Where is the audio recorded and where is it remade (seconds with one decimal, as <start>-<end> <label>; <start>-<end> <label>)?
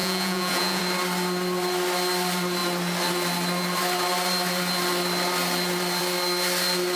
0.0-0.8 remade; 0.8-7.0 recorded